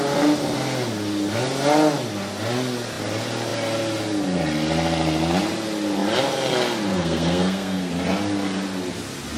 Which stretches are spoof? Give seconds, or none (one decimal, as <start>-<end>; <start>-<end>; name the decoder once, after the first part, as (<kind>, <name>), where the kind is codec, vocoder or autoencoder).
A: 6.9-7.9 (codec, SNAC)